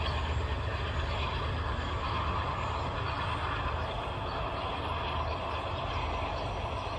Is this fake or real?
real